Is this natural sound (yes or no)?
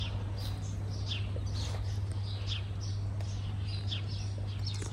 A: yes